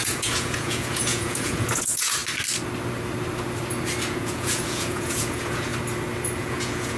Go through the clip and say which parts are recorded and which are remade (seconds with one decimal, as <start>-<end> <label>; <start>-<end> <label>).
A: 0.0-2.2 remade; 2.2-4.1 recorded; 4.1-5.7 remade; 5.7-6.4 recorded; 6.4-7.0 remade